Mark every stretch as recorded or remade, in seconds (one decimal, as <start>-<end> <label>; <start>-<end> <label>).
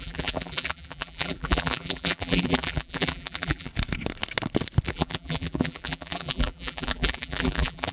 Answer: 0.0-3.7 remade; 3.7-4.9 recorded; 4.9-7.9 remade